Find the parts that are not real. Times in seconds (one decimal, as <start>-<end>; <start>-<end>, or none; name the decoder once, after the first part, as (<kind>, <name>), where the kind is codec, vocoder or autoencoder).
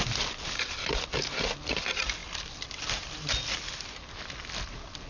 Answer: none